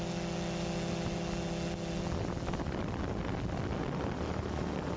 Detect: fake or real real